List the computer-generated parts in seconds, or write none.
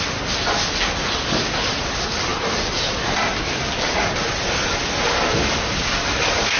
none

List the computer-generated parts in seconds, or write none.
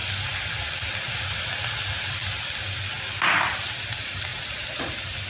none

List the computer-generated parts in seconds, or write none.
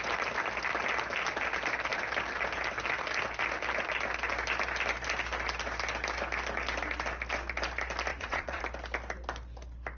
8.1-8.6 (vocoder, Vocos)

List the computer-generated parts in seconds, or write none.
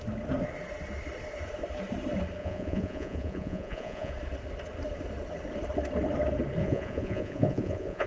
2.4-4.1 (vocoder, Vocos); 6.6-8.1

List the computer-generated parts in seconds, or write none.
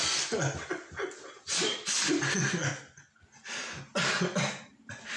none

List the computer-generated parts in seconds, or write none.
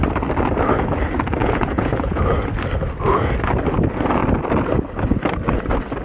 1.4-2.2 (vocoder, Vocos)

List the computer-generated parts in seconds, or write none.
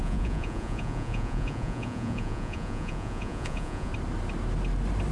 0.0-3.9 (vocoder, Vocos)